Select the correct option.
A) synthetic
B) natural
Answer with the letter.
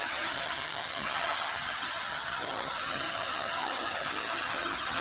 A